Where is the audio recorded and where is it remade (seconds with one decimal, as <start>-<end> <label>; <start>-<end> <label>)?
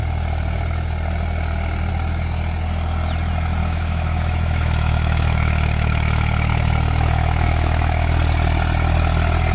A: 0.0-3.6 recorded; 3.6-8.1 remade; 8.1-9.5 recorded